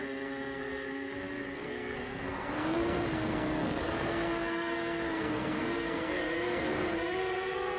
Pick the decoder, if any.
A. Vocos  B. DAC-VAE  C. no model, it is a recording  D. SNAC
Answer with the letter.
D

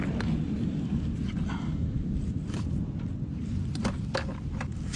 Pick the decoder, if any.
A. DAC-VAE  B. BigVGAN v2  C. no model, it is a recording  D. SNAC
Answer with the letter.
C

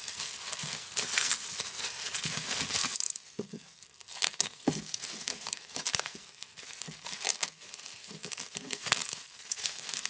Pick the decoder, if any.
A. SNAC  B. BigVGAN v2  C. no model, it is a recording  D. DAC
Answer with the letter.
A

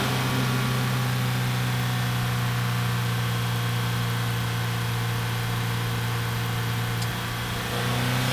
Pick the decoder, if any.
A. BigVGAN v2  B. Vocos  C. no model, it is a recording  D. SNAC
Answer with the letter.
C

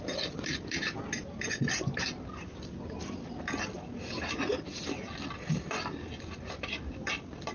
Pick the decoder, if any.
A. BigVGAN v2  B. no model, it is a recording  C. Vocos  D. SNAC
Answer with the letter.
B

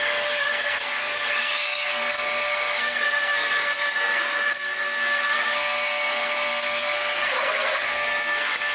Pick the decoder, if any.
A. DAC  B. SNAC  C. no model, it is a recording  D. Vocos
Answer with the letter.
B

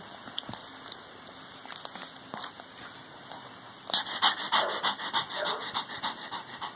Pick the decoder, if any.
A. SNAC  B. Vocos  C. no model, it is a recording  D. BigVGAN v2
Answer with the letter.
C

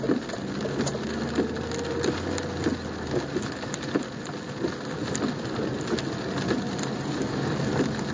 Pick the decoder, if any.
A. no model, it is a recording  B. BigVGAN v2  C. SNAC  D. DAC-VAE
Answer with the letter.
A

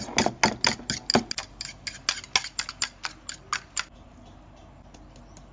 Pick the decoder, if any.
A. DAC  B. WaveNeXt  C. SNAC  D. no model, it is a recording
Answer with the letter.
D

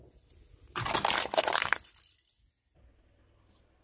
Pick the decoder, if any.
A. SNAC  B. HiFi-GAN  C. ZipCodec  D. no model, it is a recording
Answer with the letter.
D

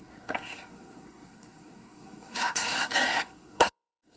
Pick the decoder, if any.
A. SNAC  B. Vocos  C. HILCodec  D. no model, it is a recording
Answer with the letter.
A